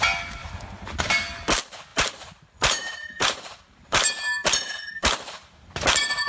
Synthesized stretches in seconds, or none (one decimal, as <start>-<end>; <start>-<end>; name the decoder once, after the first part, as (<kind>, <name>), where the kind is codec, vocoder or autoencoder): 0.4-1.0 (vocoder, BigVGAN v2); 1.9-5.7